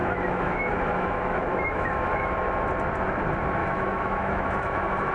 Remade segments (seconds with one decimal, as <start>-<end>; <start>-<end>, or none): 0.0-2.3; 3.6-5.1